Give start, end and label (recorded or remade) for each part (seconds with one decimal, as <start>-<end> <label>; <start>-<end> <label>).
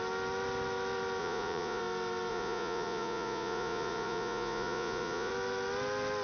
0.0-1.2 recorded; 1.2-1.8 remade; 1.8-2.3 recorded; 2.3-5.3 remade; 5.3-6.2 recorded